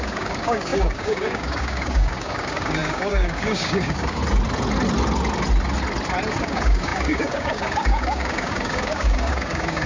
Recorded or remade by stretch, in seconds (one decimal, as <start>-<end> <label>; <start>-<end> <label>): 0.0-4.2 remade; 4.2-6.4 recorded; 6.4-9.9 remade